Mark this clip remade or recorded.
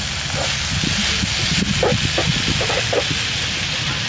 recorded